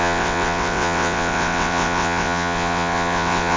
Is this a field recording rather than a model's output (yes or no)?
no